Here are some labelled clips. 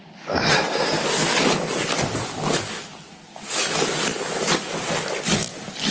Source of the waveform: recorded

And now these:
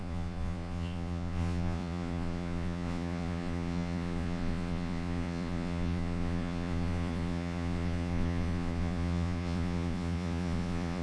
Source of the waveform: remade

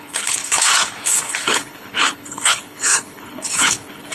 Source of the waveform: remade